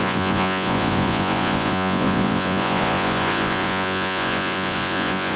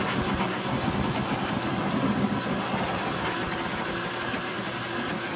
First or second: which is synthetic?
first